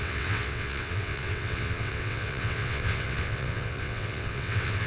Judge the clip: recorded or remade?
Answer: remade